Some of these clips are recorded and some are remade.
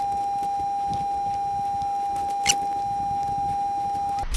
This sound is recorded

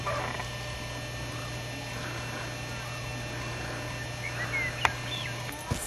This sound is recorded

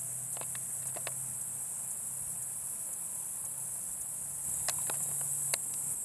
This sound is recorded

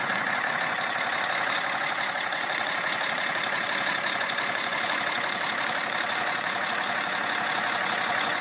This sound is remade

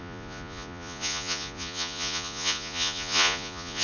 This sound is remade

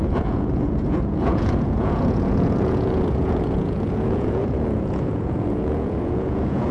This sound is remade